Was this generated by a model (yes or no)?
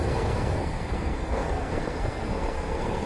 yes